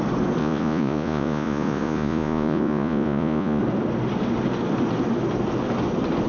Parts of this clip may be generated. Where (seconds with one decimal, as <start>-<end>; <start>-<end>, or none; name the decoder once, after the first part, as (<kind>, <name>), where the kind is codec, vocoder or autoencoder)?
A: 0.4-3.6 (vocoder, Vocos)